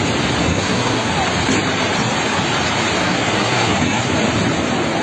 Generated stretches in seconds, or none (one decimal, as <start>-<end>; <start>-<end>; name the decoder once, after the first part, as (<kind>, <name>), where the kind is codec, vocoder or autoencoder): 0.4-1.1 (codec, SNAC); 3.0-4.1